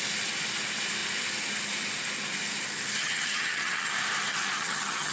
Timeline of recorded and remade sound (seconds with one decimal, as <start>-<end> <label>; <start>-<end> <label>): 0.0-3.0 recorded; 3.0-3.9 remade; 3.9-4.3 recorded; 4.3-5.1 remade